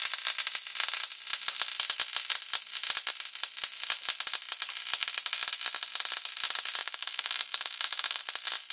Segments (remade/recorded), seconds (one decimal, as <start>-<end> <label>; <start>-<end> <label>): 0.0-6.8 recorded; 6.8-8.2 remade; 8.2-8.7 recorded